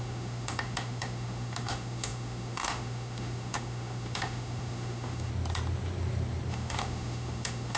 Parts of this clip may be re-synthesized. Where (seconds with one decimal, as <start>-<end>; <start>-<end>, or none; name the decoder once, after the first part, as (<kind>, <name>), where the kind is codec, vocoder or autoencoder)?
0.0-5.3 (autoencoder, DAC-VAE); 6.5-7.8